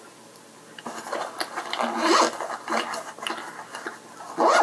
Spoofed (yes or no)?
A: no